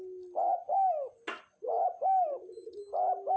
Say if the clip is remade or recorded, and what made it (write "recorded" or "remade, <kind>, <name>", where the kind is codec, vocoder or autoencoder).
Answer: recorded